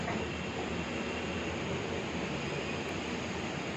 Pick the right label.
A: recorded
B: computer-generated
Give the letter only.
B